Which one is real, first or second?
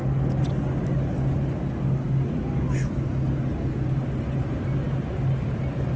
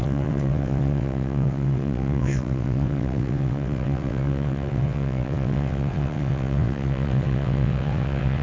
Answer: first